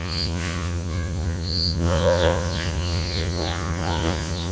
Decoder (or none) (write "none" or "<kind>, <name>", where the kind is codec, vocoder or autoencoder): vocoder, Vocos